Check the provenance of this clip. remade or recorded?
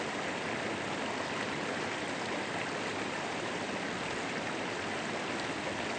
recorded